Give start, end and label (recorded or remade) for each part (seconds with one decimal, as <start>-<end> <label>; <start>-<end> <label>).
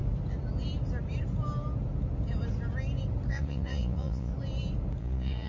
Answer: 0.0-3.3 recorded; 3.3-4.3 remade; 4.3-5.0 recorded; 5.0-5.5 remade